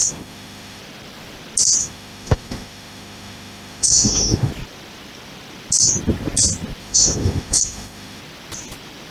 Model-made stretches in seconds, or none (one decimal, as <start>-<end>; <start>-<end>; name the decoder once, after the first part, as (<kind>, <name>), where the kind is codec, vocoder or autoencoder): 0.0-0.8 (autoencoder, DAC-VAE); 1.8-4.5; 6.8-8.2